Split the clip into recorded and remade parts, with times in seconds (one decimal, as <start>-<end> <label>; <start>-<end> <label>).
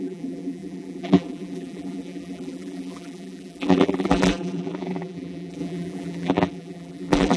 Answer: 0.0-7.4 remade